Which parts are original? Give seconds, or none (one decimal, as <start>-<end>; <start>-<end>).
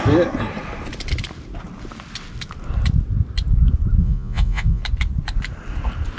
0.0-4.0; 4.8-6.2